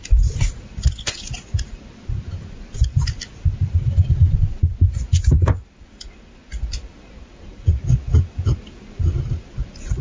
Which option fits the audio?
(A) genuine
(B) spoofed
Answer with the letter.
A